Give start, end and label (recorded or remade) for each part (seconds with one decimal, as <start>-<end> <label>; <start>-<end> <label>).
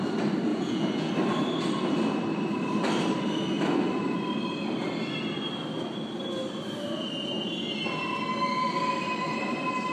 0.0-0.5 recorded; 0.5-1.1 remade; 1.1-9.9 recorded